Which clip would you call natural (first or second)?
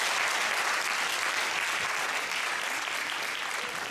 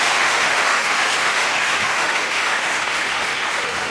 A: first